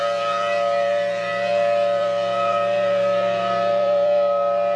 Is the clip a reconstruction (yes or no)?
yes